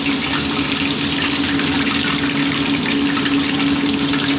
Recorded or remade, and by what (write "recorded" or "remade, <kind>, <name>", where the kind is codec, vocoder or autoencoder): recorded